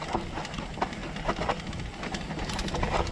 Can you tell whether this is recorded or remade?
recorded